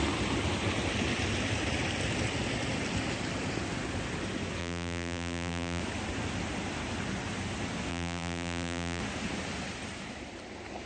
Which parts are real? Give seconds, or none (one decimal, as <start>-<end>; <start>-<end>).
0.0-4.6; 5.8-7.9; 9.0-10.9